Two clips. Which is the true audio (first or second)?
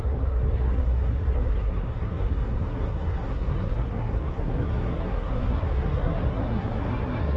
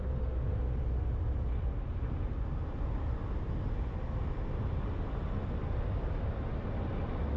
second